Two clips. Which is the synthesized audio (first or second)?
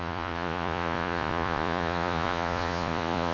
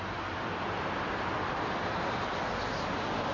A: first